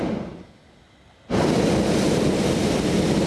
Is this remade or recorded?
remade